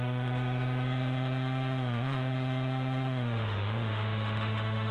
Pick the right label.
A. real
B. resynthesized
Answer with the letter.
B